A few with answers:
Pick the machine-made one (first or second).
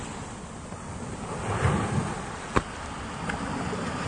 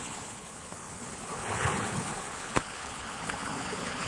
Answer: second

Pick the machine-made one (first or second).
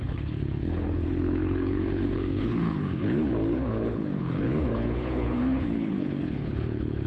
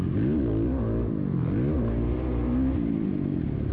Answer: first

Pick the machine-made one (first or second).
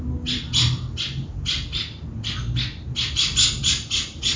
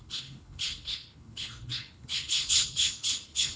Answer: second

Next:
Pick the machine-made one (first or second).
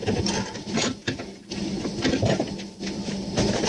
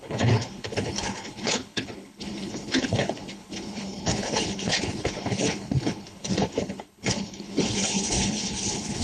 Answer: second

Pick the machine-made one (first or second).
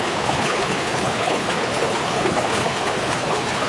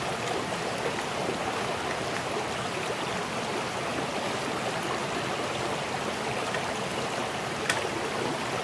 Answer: first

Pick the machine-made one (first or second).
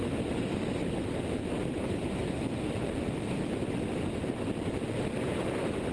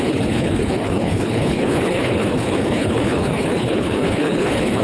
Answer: second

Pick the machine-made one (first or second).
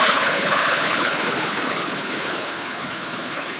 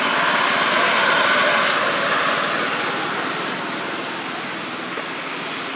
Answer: first